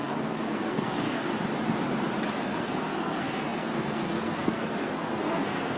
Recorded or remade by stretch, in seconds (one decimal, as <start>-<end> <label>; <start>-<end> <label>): 0.0-1.3 remade; 1.3-2.3 recorded; 2.3-5.8 remade